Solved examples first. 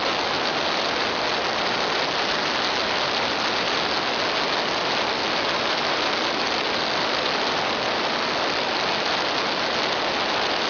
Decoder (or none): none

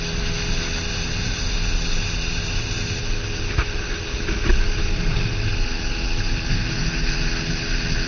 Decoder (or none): none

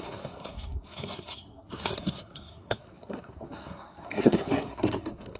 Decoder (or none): codec, SNAC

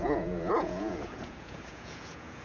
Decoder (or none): vocoder, Vocos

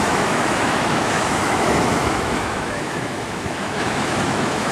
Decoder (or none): autoencoder, DAC-VAE